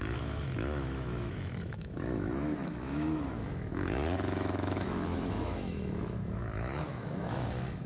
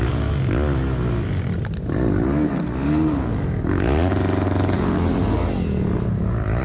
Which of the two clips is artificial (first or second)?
first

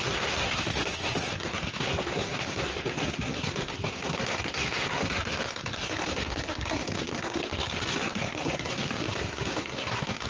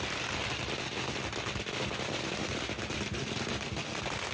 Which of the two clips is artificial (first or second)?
first